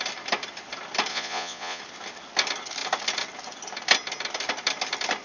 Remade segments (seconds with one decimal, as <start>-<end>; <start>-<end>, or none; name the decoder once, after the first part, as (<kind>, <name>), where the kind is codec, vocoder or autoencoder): 1.1-1.8 (vocoder, Vocos)